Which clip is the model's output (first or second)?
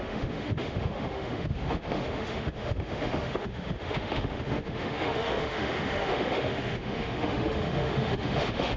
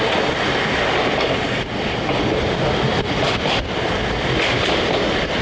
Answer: first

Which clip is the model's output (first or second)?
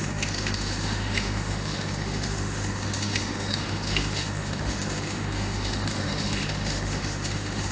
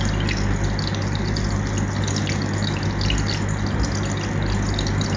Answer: first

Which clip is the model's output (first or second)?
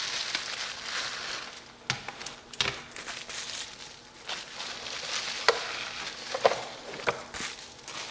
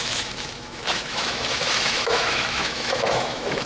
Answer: second